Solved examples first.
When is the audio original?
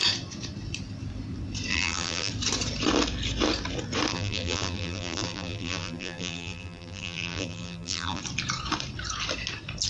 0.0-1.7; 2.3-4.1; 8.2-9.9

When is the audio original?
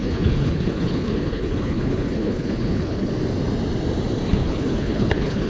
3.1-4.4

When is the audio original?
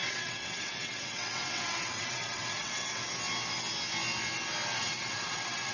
3.0-4.8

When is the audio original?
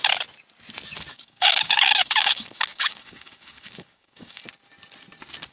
0.0-1.1; 4.4-5.5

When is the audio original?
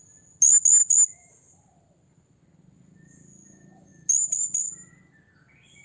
0.0-5.8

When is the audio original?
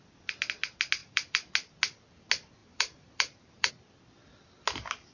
0.0-1.0; 1.5-2.6; 3.7-5.1